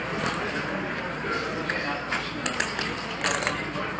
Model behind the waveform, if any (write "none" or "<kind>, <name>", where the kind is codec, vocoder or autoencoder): none